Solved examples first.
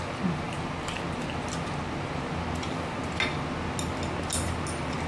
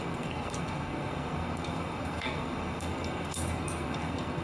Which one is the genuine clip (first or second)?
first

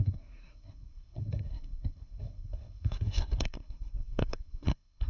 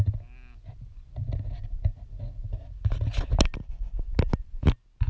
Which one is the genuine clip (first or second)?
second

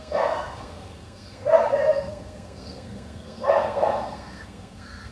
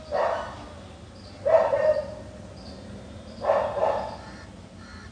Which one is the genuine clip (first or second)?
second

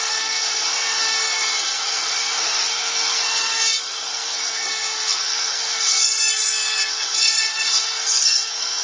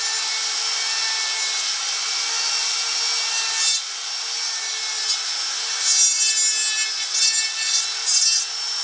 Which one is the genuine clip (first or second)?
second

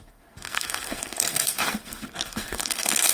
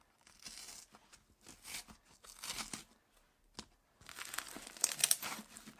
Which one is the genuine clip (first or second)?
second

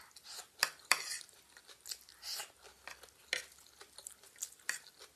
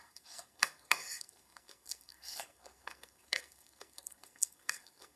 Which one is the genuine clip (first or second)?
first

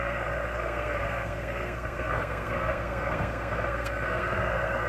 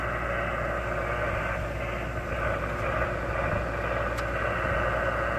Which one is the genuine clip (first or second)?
second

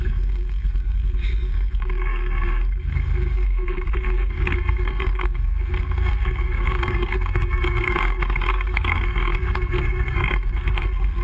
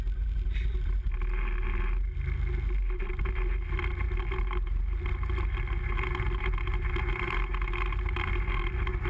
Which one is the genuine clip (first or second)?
second